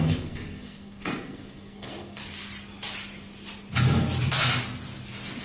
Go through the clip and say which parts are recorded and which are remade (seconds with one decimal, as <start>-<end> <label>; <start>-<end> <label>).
0.0-2.2 remade; 2.2-5.4 recorded